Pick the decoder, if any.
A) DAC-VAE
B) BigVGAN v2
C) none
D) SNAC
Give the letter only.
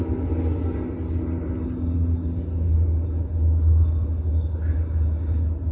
C